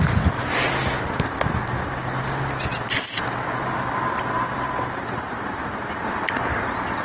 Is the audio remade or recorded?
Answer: recorded